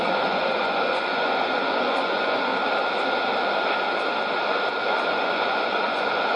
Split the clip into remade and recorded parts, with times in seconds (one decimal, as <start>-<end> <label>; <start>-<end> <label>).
0.0-2.5 remade; 2.5-5.1 recorded; 5.1-6.4 remade

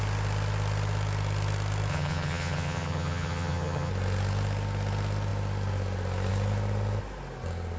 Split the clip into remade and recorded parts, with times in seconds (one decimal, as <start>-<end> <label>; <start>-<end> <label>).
0.0-1.9 recorded; 1.9-3.9 remade; 3.9-7.8 recorded

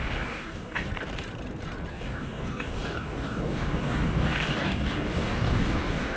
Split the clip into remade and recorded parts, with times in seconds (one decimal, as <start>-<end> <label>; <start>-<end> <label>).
0.0-0.9 remade; 0.9-1.9 recorded; 1.9-6.2 remade

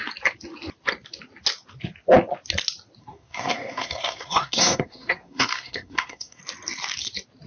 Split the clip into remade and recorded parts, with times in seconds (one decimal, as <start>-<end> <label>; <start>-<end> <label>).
0.0-3.0 recorded; 3.0-6.4 remade; 6.4-7.5 recorded

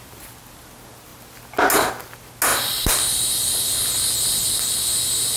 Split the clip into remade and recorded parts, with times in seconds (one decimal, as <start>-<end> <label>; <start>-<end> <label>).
0.0-5.4 recorded